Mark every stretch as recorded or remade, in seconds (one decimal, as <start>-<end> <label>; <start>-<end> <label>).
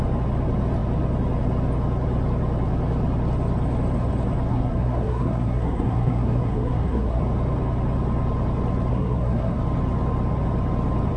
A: 0.0-4.5 recorded; 4.5-7.2 remade; 7.2-8.9 recorded; 8.9-9.6 remade; 9.6-11.2 recorded